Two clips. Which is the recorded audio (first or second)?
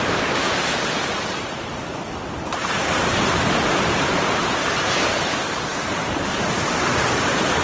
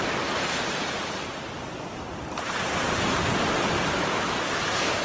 second